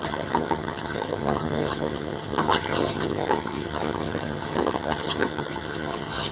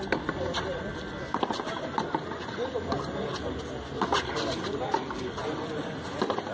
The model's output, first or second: first